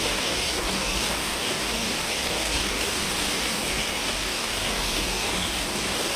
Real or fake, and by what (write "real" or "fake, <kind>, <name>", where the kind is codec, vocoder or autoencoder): fake, codec, DAC